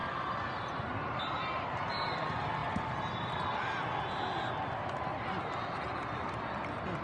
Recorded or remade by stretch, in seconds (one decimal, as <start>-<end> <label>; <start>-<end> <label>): 0.0-7.0 recorded